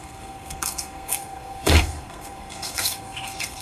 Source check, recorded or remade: remade